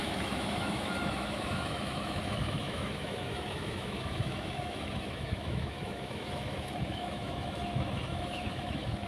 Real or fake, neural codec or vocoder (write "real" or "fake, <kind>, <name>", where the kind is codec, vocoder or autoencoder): fake, autoencoder, DAC-VAE